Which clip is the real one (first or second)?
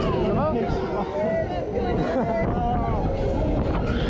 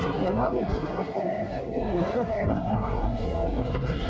first